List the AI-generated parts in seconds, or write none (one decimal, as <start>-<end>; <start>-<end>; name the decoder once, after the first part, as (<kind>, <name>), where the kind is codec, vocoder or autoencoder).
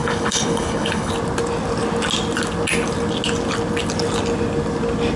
0.0-1.1 (codec, HILCodec)